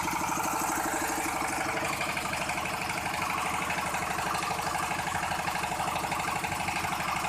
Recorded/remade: recorded